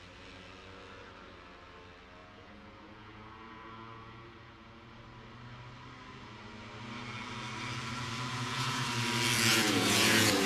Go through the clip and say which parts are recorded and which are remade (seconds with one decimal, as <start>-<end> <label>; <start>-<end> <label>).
0.0-2.2 recorded; 2.2-5.0 remade; 5.0-8.3 recorded; 8.3-8.9 remade; 8.9-9.5 recorded; 9.5-10.5 remade